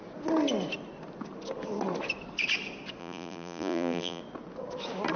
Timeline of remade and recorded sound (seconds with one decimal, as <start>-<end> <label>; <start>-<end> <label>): 0.0-3.0 recorded; 3.0-4.2 remade; 4.2-5.2 recorded